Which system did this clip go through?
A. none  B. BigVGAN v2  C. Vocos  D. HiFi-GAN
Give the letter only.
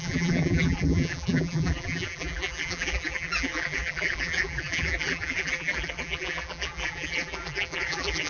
B